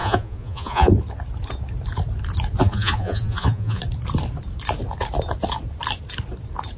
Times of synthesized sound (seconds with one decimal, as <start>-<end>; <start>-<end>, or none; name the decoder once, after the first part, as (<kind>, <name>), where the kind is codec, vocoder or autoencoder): 0.0-0.9 (vocoder, Vocos); 2.6-3.8